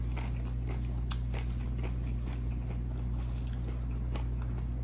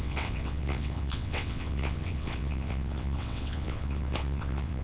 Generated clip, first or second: second